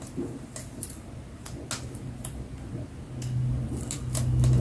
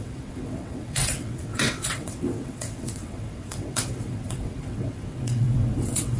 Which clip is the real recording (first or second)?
first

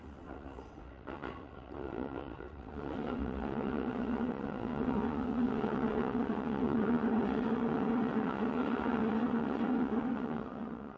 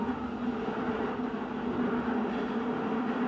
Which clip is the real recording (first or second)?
second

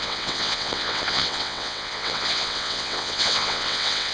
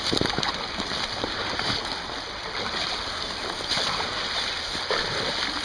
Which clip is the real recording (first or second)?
second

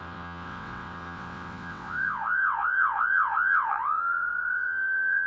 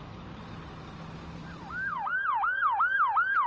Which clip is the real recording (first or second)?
second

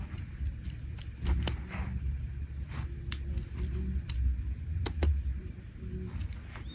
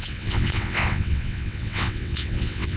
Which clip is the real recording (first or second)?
first